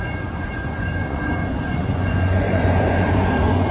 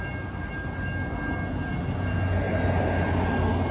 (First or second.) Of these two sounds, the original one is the second